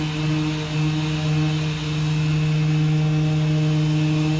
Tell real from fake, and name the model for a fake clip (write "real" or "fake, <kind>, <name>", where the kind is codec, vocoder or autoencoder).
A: real